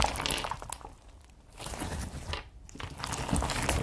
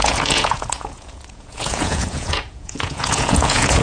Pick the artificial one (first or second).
second